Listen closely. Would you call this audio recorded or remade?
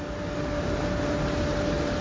recorded